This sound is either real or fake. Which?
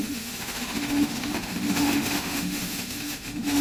fake